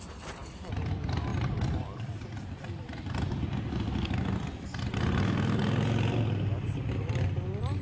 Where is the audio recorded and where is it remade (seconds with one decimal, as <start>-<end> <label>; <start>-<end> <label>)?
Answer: 0.0-7.8 recorded